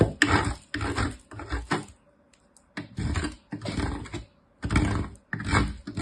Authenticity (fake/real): real